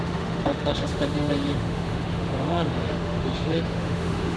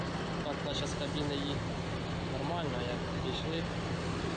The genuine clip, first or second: second